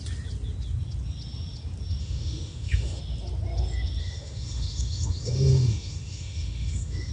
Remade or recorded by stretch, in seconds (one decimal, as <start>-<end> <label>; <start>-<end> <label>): 0.0-2.0 recorded; 2.0-3.0 remade; 3.0-4.0 recorded; 4.0-7.1 remade